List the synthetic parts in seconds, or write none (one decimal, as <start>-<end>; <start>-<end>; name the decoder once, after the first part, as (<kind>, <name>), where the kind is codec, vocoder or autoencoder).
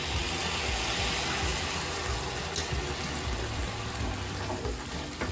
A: none